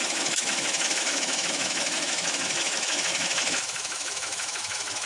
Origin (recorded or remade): remade